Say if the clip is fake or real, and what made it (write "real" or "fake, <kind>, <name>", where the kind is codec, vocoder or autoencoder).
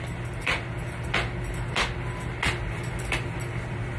real